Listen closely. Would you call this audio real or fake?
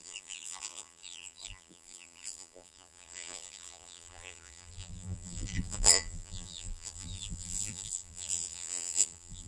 fake